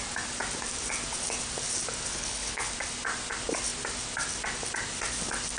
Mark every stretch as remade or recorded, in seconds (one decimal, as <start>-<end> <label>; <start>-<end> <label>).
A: 0.0-2.1 recorded; 2.1-2.7 remade; 2.7-5.6 recorded